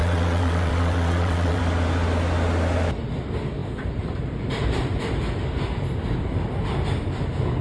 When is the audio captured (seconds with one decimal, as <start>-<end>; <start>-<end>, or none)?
1.6-7.6